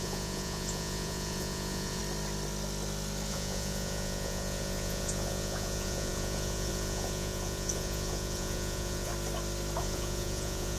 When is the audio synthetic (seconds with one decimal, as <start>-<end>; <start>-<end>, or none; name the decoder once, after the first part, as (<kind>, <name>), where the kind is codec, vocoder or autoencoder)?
0.0-2.0 (vocoder, Vocos); 3.3-9.1; 9.8-10.8